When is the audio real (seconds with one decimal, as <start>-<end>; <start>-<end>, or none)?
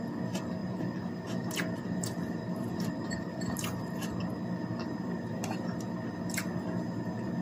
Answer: 0.0-0.6; 4.2-4.7; 5.8-7.4